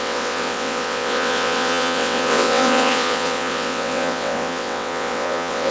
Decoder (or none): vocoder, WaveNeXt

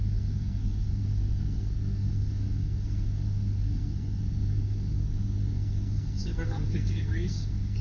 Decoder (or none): codec, SNAC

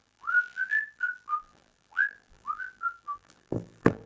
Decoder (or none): vocoder, BigVGAN v2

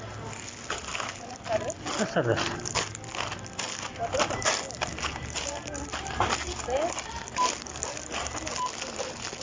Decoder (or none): none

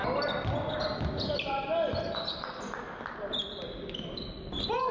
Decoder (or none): none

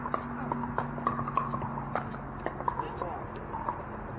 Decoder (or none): none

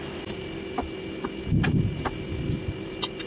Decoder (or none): none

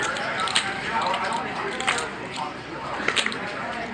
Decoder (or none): vocoder, BigVGAN v2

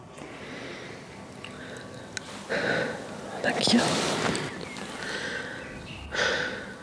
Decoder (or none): none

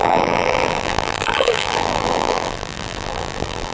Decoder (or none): vocoder, BigVGAN v2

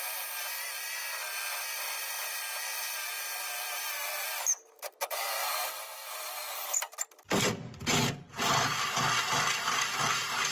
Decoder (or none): none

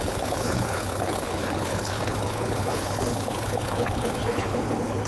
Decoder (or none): codec, HILCodec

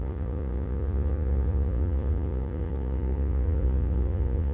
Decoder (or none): vocoder, Vocos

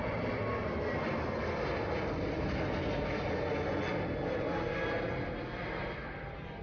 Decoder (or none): none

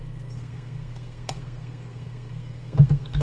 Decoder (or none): codec, SNAC